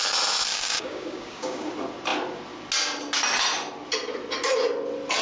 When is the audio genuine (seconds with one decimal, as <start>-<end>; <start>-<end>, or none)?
0.0-0.5; 1.7-5.2